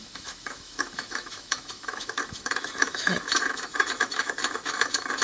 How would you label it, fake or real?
fake